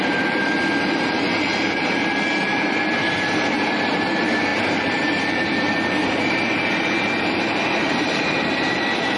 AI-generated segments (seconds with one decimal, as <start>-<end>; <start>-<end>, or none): 0.0-1.5; 2.4-9.2